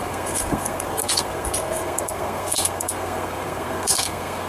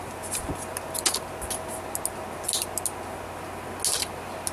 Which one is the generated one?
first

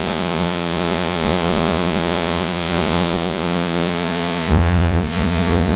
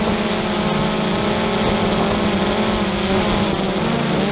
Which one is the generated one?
first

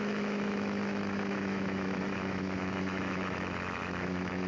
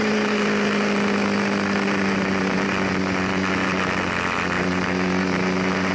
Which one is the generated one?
first